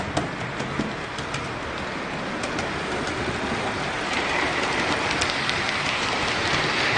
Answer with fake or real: real